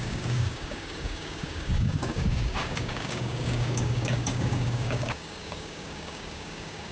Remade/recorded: remade